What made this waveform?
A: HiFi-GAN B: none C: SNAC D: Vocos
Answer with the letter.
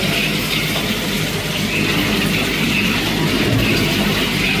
B